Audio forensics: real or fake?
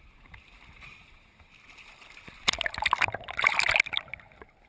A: real